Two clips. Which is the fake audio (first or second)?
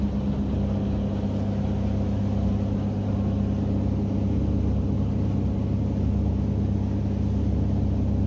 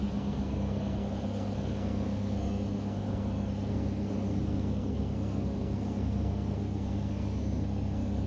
second